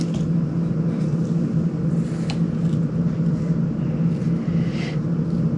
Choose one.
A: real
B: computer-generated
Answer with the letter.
A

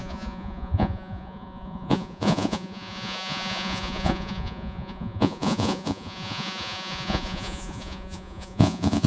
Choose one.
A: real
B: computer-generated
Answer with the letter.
B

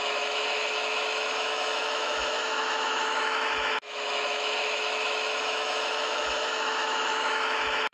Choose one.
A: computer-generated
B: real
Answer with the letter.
A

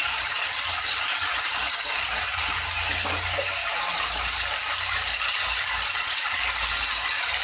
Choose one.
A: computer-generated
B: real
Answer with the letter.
B